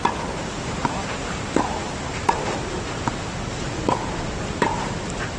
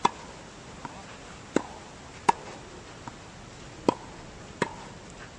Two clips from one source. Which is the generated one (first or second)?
first